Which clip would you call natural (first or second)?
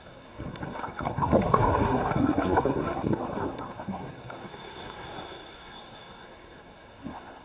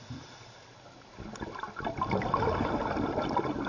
second